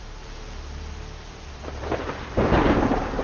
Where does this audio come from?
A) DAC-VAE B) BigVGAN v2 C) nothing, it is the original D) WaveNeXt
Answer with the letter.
B